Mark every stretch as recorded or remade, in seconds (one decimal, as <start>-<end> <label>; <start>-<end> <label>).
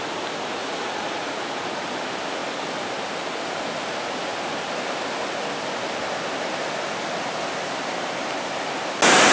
0.0-0.6 recorded; 0.6-1.4 remade; 1.4-9.3 recorded